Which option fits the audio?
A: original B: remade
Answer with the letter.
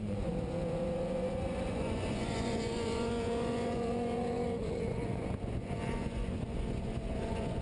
B